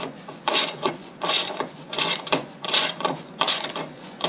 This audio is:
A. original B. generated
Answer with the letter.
B